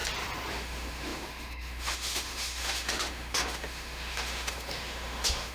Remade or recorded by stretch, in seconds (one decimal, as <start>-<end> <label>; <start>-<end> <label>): 0.0-0.5 recorded; 0.5-5.5 remade

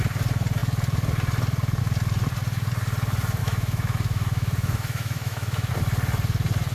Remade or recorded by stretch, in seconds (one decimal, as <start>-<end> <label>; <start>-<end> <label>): 0.0-3.4 recorded; 3.4-5.7 remade; 5.7-6.7 recorded

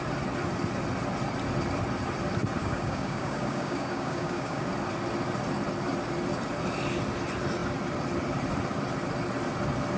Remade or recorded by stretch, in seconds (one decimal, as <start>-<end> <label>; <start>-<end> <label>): 0.0-2.6 recorded; 2.6-4.7 remade; 4.7-10.0 recorded